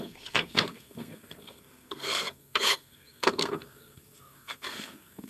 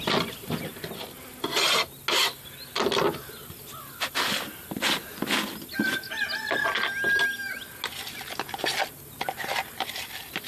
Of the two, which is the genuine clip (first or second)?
second